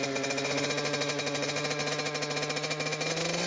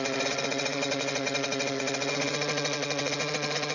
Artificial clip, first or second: second